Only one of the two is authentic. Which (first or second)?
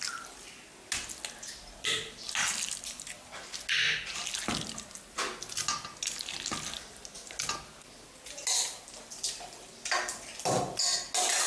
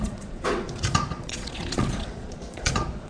first